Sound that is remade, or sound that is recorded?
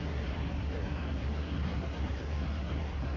remade